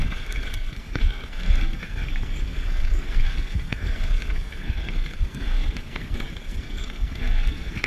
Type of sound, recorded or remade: remade